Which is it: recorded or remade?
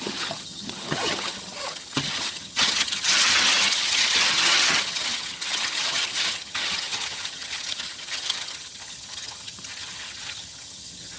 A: remade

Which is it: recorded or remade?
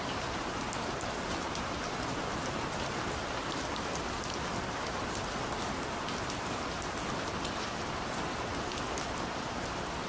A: recorded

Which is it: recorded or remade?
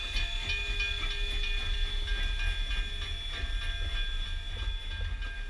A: recorded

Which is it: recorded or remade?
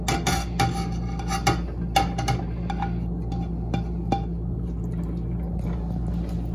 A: recorded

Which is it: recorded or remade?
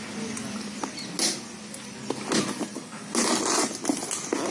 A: recorded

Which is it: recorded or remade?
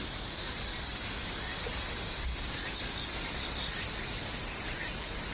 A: recorded